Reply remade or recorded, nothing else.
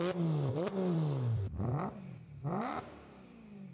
remade